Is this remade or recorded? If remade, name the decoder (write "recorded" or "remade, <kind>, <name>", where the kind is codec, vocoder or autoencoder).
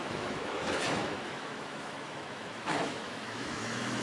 remade, autoencoder, DAC-VAE